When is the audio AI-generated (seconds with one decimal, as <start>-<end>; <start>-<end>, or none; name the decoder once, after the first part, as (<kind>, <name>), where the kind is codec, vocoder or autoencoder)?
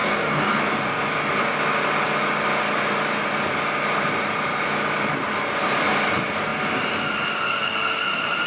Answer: 0.0-0.6 (codec, DAC)